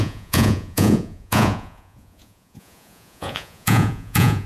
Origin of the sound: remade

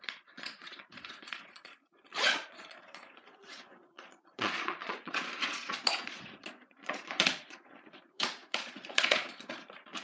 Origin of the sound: remade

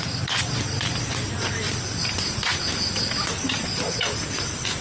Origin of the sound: recorded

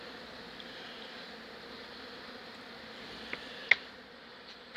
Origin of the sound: recorded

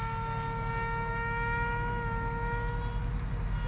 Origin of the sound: recorded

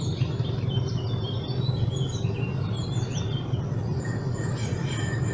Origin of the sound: recorded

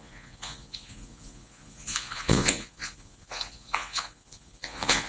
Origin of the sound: remade